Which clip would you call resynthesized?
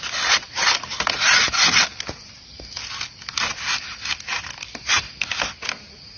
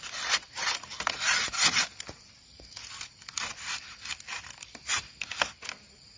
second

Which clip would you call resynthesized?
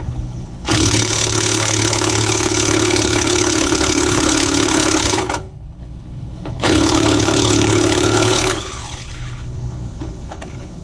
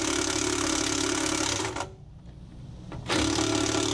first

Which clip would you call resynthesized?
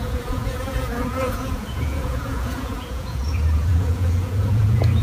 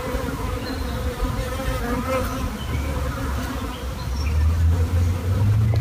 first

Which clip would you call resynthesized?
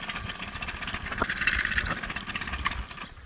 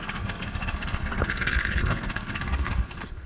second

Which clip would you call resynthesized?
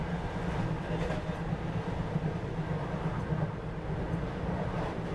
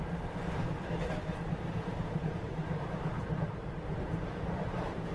second